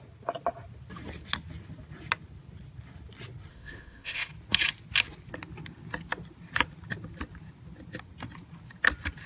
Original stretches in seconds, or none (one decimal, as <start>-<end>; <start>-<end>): 0.0-3.5; 4.3-9.3